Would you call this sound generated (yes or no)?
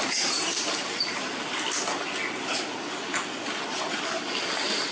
no